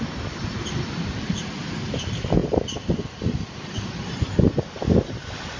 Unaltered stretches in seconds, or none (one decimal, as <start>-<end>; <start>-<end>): 0.0-5.6